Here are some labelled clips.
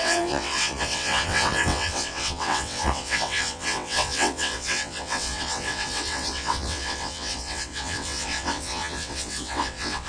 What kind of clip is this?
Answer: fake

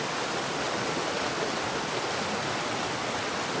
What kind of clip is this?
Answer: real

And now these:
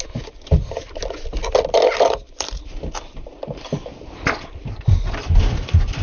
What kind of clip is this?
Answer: real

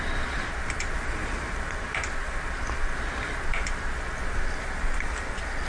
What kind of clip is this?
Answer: real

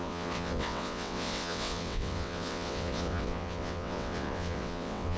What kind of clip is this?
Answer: fake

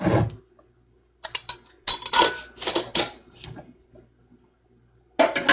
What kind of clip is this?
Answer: real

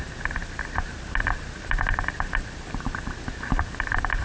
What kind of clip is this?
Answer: real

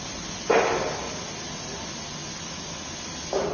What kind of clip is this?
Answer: real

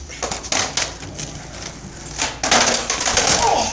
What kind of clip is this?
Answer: real